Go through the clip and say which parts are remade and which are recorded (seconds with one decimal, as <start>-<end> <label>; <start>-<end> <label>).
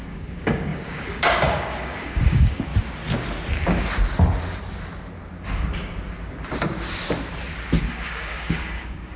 0.0-2.7 remade; 2.7-7.9 recorded; 7.9-9.2 remade